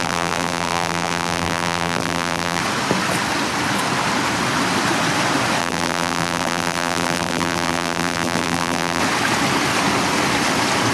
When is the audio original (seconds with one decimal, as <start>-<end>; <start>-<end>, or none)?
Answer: 2.6-5.6; 9.0-10.9